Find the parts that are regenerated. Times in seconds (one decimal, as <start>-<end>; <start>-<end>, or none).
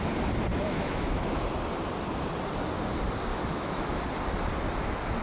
0.5-1.4; 3.3-4.0